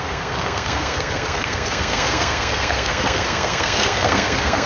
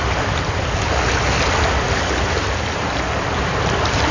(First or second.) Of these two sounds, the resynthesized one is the first